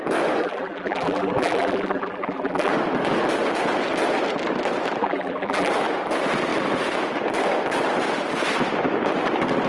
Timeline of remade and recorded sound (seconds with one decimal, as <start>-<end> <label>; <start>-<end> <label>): 0.0-0.4 recorded; 0.4-2.7 remade; 2.7-5.0 recorded; 5.0-5.7 remade; 5.7-9.7 recorded